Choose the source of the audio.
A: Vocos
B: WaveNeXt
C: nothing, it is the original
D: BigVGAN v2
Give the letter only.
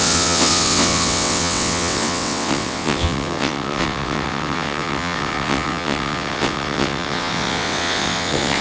B